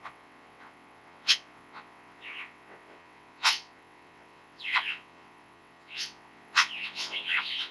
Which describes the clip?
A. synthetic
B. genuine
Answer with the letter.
A